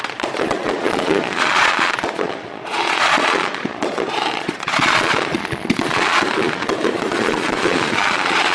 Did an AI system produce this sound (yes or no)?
yes